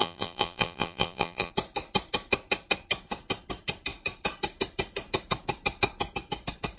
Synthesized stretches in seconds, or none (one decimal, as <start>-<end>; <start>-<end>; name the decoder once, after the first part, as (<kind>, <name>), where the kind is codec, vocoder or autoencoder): 0.0-1.5 (vocoder, BigVGAN v2)